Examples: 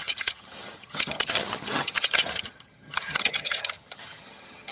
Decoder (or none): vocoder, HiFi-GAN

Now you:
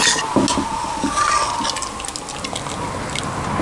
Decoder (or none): none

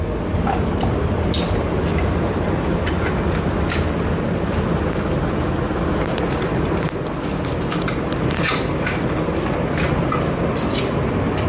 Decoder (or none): none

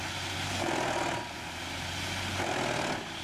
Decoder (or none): none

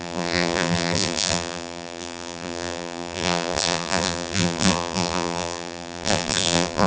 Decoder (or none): vocoder, BigVGAN v2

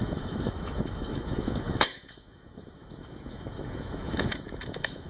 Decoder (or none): autoencoder, DAC-VAE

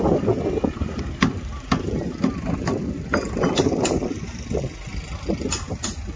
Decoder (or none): none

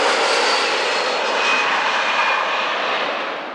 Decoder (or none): none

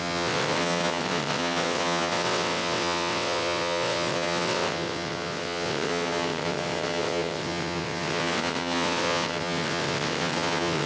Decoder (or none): vocoder, WaveNeXt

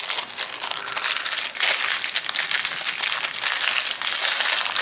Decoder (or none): none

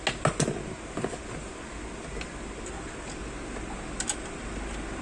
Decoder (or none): none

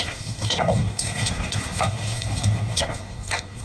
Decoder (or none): codec, SNAC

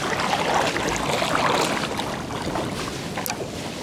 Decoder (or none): none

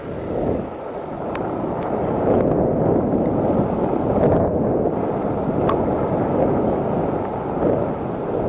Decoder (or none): none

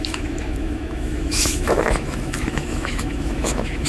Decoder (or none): autoencoder, DAC-VAE